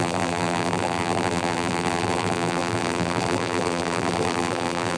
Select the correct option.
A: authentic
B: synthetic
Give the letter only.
B